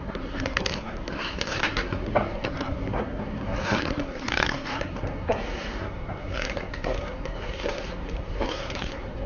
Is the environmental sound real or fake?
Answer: fake